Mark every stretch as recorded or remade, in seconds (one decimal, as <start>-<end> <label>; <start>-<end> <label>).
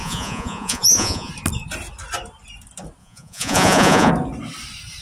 0.0-1.3 remade; 1.3-3.0 recorded; 3.0-4.1 remade; 4.1-5.0 recorded